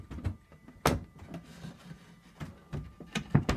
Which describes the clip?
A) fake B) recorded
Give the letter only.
B